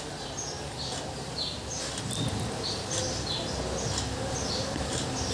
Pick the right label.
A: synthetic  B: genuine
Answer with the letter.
B